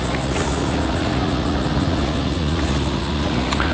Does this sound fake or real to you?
fake